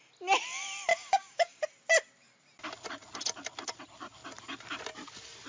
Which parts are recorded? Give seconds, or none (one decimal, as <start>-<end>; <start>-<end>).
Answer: 0.0-0.9; 1.6-5.5